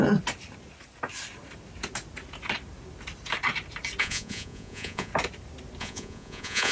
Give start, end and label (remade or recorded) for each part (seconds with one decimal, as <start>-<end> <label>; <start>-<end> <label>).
0.0-4.0 recorded; 4.0-5.1 remade; 5.1-5.8 recorded; 5.8-6.7 remade